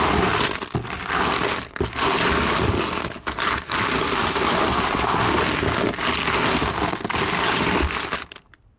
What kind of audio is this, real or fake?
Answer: real